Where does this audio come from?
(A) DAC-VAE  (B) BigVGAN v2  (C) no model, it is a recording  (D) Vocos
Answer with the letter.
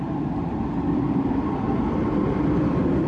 B